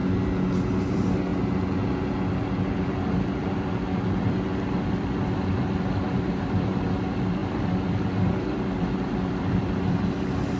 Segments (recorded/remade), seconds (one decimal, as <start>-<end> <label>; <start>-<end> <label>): 0.0-0.8 recorded; 0.8-1.3 remade; 1.3-2.8 recorded; 2.8-10.6 remade